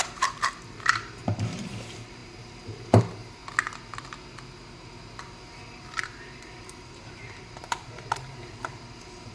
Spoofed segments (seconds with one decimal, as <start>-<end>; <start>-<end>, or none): 0.0-3.4; 5.2-9.3